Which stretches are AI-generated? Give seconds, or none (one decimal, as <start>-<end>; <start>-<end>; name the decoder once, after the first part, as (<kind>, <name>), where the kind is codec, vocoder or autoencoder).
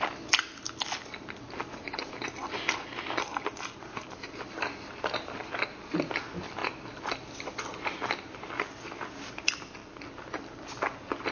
none